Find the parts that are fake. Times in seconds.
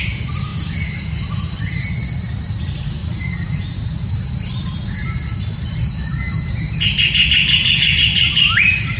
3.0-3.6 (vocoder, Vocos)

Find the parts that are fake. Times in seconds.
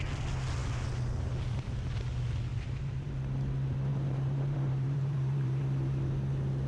2.5-3.1 (vocoder, BigVGAN v2); 3.9-5.6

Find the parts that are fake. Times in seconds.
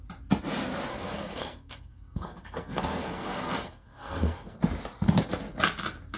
0.9-4.6 (codec, SNAC)